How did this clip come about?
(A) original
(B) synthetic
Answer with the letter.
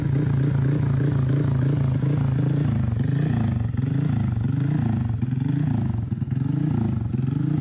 A